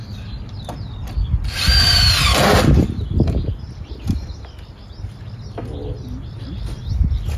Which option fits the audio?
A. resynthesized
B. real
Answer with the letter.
B